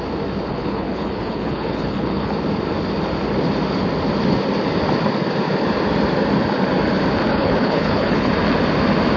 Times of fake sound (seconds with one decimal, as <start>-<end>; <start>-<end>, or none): 0.5-2.3; 7.3-8.3